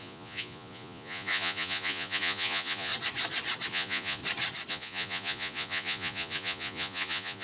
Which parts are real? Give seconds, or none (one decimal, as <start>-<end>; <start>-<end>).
2.9-3.7; 4.2-4.7